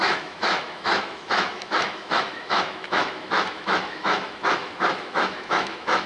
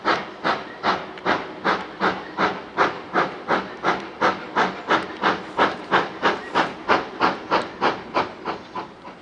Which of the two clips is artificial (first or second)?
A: first